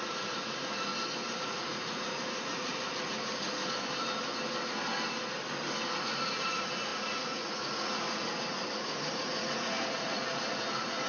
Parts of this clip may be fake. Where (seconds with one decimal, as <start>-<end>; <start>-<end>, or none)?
0.0-0.9; 1.4-3.6; 6.0-11.1